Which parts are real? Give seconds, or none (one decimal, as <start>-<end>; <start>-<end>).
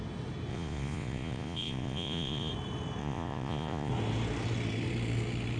0.0-0.5; 2.5-3.0; 3.9-5.6